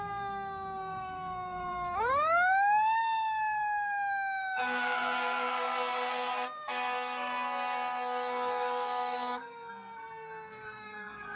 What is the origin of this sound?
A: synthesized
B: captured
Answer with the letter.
A